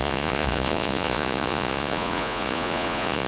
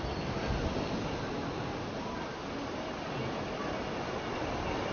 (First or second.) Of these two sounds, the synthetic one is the first